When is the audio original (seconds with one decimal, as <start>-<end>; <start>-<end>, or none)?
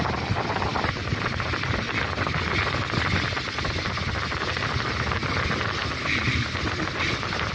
0.0-7.5